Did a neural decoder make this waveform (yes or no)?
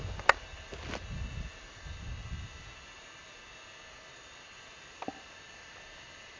no